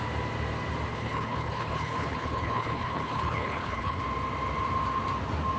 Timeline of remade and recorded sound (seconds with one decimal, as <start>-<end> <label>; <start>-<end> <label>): 0.0-0.9 recorded; 0.9-4.0 remade; 4.0-5.6 recorded